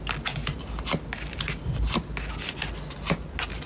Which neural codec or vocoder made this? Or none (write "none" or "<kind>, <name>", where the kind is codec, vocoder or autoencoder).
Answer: none